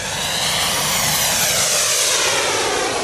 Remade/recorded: recorded